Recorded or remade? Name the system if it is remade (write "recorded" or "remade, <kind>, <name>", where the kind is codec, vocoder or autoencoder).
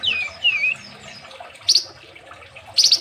recorded